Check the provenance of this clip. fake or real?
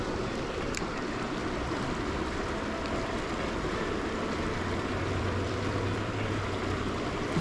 fake